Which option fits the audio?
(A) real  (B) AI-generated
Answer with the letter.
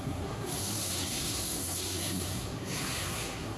B